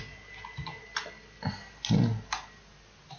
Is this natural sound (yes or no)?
yes